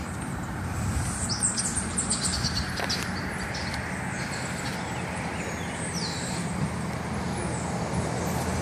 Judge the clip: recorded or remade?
remade